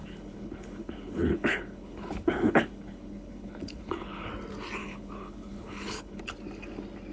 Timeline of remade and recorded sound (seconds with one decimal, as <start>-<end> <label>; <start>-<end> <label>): 0.0-4.3 remade; 4.3-4.8 recorded; 4.8-6.2 remade; 6.2-7.1 recorded